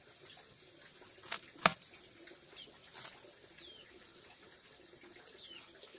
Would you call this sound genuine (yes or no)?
yes